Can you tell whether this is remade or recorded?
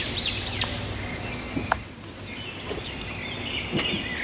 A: recorded